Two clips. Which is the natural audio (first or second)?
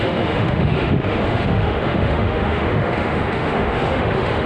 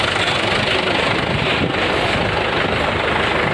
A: second